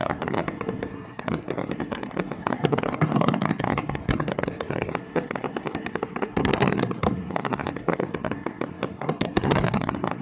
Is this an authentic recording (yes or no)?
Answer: no